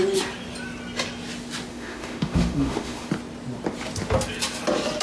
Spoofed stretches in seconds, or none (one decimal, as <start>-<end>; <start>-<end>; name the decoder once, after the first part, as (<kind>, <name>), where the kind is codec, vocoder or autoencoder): 1.7-3.1 (autoencoder, DAC-VAE)